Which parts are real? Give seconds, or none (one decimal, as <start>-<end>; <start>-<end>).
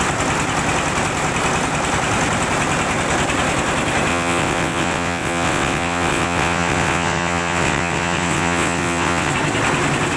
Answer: 0.0-4.1; 9.3-10.2